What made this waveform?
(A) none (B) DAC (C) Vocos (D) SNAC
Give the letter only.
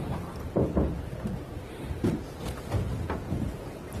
A